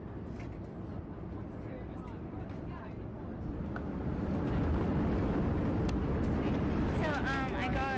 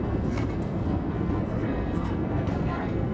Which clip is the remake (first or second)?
second